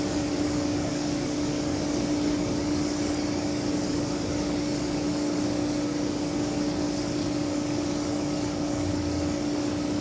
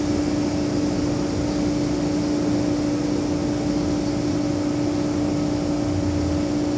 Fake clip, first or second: first